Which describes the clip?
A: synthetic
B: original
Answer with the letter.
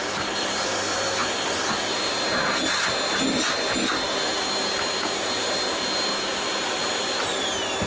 B